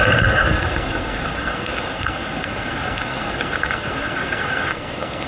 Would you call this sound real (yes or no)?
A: no